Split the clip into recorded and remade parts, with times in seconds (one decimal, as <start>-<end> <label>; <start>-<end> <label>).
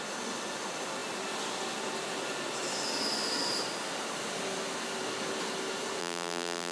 0.0-6.0 recorded; 6.0-6.7 remade